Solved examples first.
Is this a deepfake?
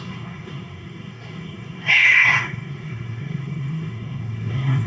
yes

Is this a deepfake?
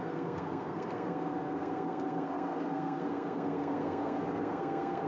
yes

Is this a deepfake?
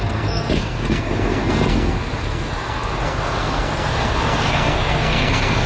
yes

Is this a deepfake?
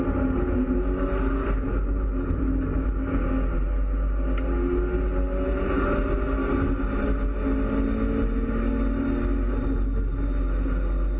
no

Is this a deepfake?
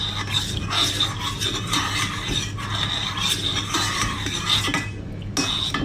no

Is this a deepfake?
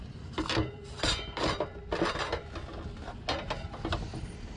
no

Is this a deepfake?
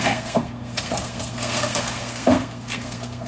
yes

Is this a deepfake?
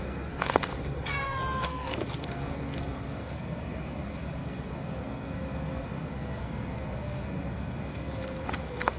yes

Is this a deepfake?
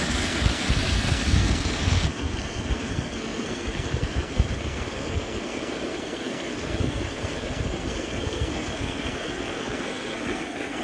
yes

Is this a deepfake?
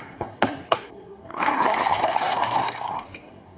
yes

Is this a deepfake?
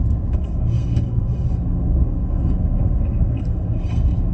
yes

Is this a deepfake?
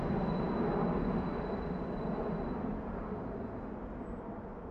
no